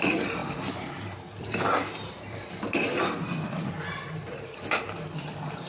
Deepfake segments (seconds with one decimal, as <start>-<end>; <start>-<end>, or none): 0.0-5.7